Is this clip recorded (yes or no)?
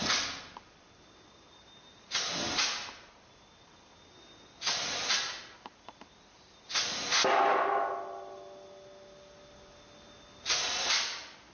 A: yes